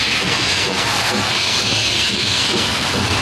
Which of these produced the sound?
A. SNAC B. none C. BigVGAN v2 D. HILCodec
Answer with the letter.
A